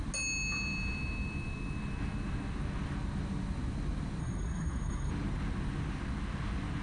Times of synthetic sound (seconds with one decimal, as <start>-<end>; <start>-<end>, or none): 4.2-5.1